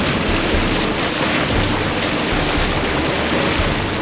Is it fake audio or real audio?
real